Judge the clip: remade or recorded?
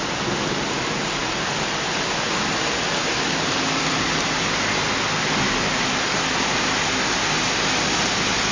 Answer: recorded